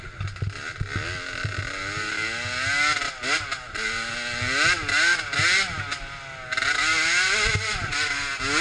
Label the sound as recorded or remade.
recorded